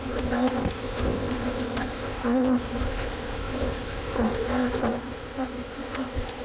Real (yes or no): no